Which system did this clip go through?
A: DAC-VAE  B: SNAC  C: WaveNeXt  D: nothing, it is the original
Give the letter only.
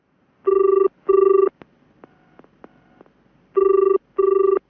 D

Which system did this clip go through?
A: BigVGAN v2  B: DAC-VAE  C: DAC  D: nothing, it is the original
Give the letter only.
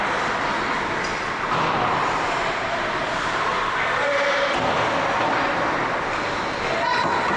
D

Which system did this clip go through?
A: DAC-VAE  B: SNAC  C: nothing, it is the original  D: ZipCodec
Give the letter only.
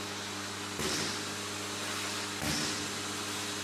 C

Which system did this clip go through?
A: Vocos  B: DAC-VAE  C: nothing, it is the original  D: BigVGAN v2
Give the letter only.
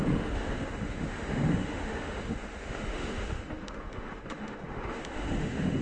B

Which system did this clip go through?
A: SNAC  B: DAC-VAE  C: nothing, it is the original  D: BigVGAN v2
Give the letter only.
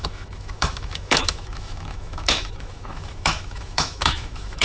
B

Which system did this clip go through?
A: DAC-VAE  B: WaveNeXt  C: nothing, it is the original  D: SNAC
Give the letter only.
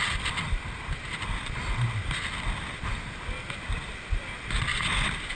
C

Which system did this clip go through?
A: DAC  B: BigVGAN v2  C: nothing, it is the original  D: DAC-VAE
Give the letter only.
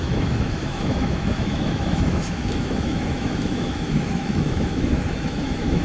D